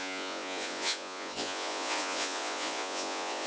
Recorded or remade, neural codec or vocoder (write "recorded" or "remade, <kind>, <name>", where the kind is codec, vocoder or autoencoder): remade, vocoder, Vocos